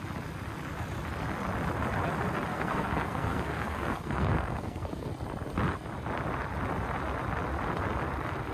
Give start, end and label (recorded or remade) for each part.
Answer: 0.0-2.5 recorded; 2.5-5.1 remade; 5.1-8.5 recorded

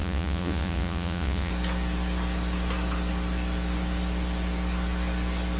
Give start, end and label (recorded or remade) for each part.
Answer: 0.0-1.5 remade; 1.5-5.6 recorded

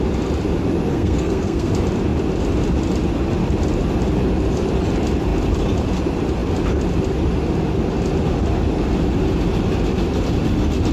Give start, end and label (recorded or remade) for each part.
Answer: 0.0-0.9 recorded; 0.9-1.7 remade; 1.7-10.9 recorded

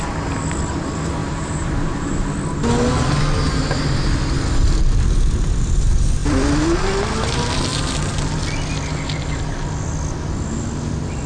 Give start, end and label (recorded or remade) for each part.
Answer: 0.0-1.2 recorded; 1.2-2.2 remade; 2.2-11.3 recorded